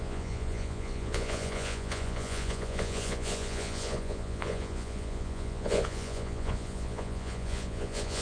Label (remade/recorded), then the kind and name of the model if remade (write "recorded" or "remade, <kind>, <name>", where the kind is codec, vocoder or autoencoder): remade, vocoder, Vocos